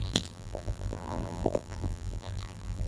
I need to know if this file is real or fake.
fake